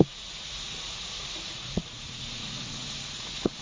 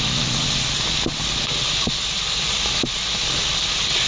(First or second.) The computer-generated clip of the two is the first